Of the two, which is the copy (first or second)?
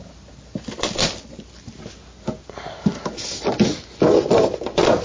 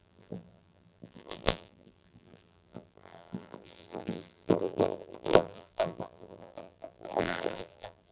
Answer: second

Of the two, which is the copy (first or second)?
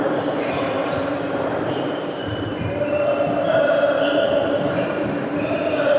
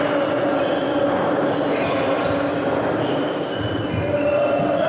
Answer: first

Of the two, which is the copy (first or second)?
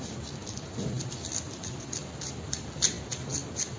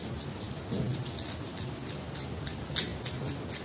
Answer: first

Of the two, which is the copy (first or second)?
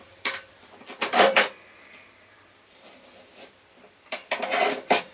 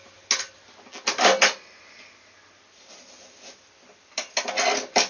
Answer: first